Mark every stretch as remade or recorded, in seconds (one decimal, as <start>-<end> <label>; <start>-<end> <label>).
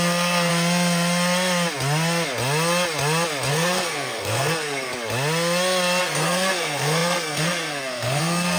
0.0-0.5 remade; 0.5-3.5 recorded; 3.5-4.9 remade; 4.9-6.0 recorded; 6.0-8.6 remade